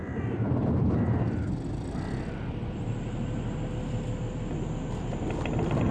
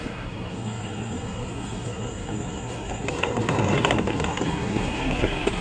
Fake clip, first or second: second